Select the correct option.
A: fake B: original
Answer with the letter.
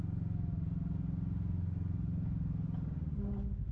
B